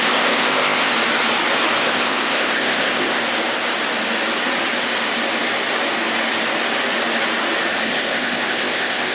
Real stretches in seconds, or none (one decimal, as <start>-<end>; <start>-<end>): 0.9-1.8; 3.2-7.7